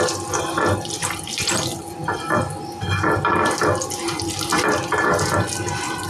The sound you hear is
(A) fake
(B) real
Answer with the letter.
B